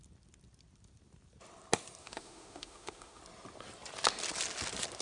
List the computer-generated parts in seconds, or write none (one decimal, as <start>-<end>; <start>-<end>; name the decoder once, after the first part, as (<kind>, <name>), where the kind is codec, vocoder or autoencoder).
2.0-3.2 (autoencoder, DAC-VAE)